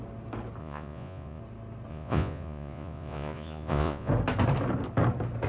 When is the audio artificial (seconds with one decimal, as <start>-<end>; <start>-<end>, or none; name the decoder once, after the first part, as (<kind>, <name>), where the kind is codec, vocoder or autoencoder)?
0.6-1.4 (vocoder, Vocos); 1.9-4.1